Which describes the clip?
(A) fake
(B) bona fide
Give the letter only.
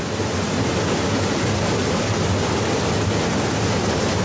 B